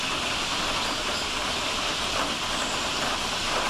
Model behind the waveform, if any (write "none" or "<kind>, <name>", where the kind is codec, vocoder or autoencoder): none